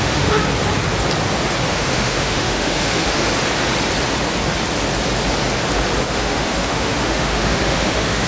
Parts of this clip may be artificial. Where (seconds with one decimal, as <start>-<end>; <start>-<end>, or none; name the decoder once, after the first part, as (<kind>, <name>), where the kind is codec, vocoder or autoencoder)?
0.0-0.4 (autoencoder, DAC-VAE); 1.7-3.2; 6.0-8.3